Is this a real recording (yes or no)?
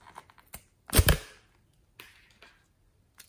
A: yes